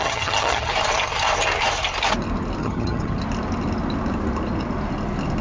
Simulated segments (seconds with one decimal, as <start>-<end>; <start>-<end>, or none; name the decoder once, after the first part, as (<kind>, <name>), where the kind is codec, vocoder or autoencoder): 0.0-0.7 (vocoder, HiFi-GAN); 2.6-3.2